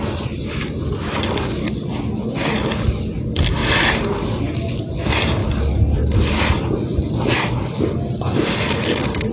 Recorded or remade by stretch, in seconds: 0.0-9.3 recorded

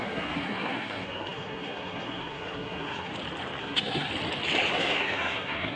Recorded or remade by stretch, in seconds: 0.0-3.1 remade; 3.1-3.6 recorded; 3.6-4.1 remade; 4.1-4.7 recorded; 4.7-5.8 remade

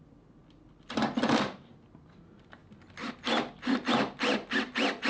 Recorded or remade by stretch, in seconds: 0.0-5.1 recorded

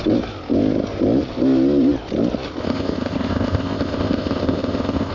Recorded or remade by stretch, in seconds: 0.0-2.6 recorded; 2.6-5.1 remade

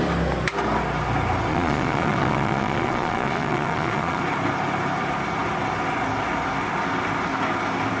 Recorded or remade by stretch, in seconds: 0.0-1.5 recorded; 1.5-4.2 remade; 4.2-8.0 recorded

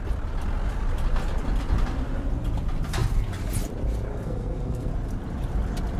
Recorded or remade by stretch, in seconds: 0.0-4.1 recorded; 4.1-4.9 remade; 4.9-6.0 recorded

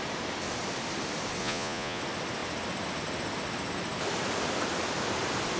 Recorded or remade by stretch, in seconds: 0.0-1.4 recorded; 1.4-2.0 remade; 2.0-5.6 recorded